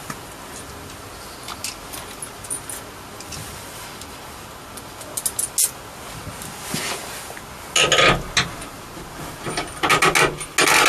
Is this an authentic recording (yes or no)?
yes